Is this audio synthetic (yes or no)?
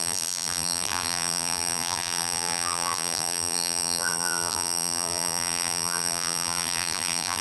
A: yes